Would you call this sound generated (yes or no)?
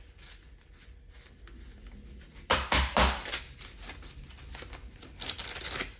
no